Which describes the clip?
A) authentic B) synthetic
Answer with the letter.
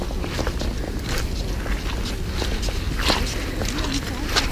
A